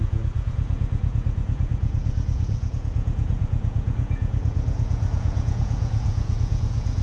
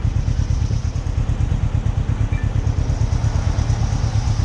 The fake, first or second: first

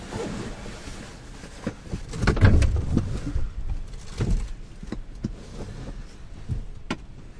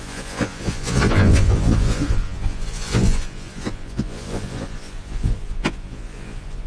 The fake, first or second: second